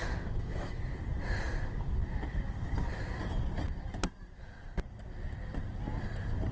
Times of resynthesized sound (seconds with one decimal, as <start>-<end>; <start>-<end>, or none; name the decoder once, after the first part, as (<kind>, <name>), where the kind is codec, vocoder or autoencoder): 0.0-0.8 (autoencoder, DAC-VAE)